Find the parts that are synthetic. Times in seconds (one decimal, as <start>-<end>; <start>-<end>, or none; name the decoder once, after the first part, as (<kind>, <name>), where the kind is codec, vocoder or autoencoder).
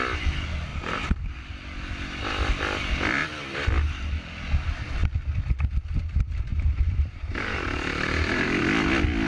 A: 0.7-1.5 (vocoder, BigVGAN v2); 6.5-8.6